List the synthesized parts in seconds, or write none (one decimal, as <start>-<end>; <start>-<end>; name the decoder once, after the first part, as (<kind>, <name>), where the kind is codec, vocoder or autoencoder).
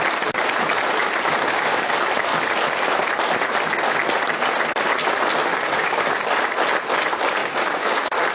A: 1.4-1.9 (codec, DAC); 5.5-6.0; 7.4-8.3